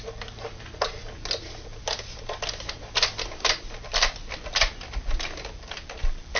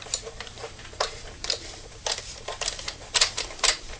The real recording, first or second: first